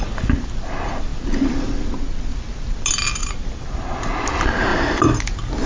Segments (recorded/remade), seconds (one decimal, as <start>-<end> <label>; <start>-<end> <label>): 0.0-3.2 recorded; 3.2-4.0 remade; 4.0-4.7 recorded; 4.7-5.2 remade; 5.2-5.7 recorded